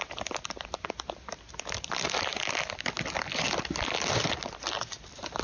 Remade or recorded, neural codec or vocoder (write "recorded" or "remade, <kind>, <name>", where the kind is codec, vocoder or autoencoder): recorded